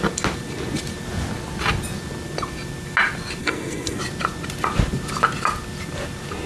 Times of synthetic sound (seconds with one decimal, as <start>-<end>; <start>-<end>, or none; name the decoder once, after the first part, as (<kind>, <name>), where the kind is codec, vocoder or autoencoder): 3.4-4.0 (codec, SNAC)